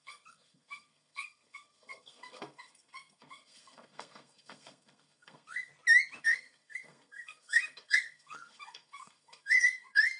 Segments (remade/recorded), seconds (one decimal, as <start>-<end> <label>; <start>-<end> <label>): 0.0-5.7 remade; 5.7-6.2 recorded; 6.2-10.2 remade